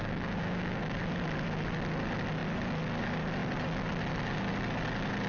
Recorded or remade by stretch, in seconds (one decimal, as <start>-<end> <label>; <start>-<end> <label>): 0.0-1.0 remade; 1.0-5.3 recorded